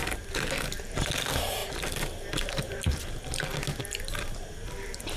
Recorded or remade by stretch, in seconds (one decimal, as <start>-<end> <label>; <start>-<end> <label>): 0.0-1.2 recorded; 1.2-1.6 remade; 1.6-4.7 recorded; 4.7-5.2 remade